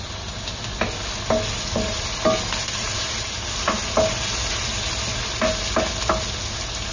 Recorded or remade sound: recorded